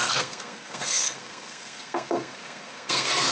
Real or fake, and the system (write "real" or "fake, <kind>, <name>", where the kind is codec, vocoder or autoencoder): fake, codec, SNAC